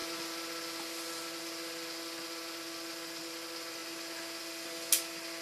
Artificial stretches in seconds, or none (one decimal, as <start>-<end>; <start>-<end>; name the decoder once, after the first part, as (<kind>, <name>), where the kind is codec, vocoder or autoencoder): none